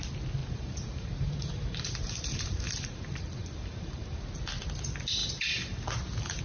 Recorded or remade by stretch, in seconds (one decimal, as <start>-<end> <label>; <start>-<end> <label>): 0.0-0.4 recorded; 0.4-4.2 remade; 4.2-6.4 recorded